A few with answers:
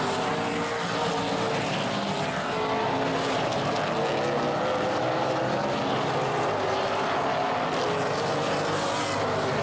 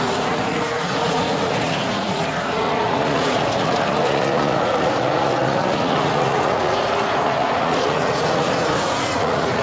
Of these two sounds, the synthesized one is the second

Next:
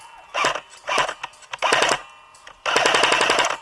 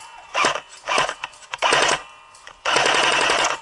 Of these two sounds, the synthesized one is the second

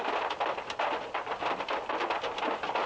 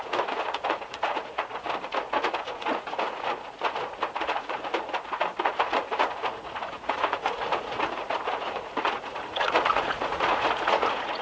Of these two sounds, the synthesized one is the second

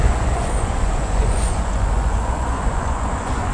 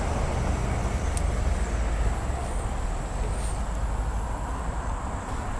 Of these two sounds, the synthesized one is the first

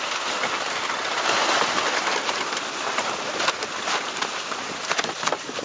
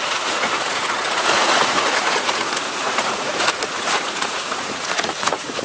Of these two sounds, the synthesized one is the second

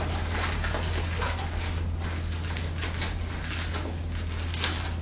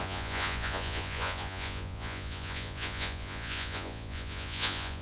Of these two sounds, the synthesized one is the second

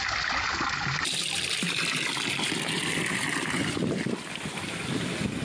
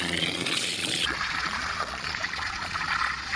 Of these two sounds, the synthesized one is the second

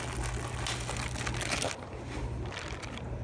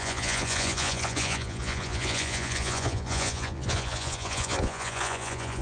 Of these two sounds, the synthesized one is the second